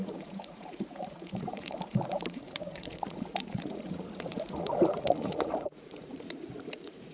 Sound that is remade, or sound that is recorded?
remade